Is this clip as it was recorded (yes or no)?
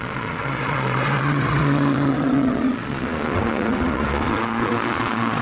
no